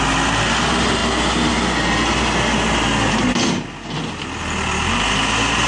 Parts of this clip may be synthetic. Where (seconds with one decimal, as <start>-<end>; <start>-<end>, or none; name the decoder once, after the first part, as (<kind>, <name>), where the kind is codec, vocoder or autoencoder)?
none